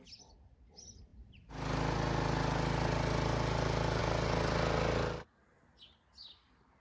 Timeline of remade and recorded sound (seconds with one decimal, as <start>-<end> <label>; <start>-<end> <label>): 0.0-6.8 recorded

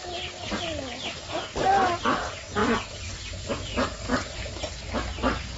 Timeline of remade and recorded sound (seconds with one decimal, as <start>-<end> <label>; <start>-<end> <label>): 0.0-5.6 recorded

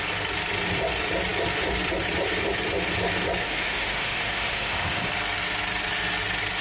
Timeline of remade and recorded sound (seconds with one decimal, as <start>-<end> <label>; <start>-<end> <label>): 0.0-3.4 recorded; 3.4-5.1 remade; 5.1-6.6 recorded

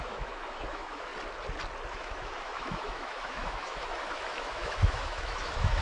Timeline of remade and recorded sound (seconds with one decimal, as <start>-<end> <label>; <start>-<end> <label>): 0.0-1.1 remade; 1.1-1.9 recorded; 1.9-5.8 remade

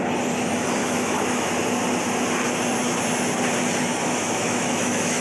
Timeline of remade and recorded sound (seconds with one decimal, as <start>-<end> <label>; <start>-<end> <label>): 0.0-0.8 recorded; 0.8-1.5 remade; 1.5-4.0 recorded; 4.0-5.2 remade

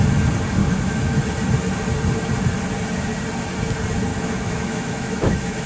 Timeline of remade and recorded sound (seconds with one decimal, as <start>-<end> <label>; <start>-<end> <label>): 0.0-0.6 recorded; 0.6-1.2 remade; 1.2-4.1 recorded; 4.1-5.7 remade

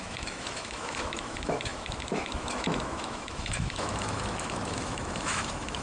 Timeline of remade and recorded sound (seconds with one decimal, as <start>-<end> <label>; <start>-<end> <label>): 0.0-5.8 remade